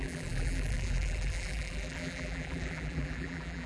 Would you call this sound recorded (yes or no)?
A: no